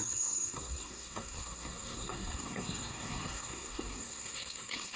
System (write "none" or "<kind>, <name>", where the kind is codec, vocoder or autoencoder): codec, SNAC